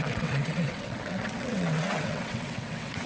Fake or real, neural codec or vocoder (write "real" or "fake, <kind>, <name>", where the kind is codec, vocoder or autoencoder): fake, vocoder, WaveNeXt